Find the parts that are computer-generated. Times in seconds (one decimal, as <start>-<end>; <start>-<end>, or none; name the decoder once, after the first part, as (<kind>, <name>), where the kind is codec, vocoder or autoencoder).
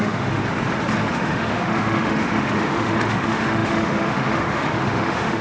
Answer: 0.0-0.4 (autoencoder, DAC-VAE); 1.1-5.4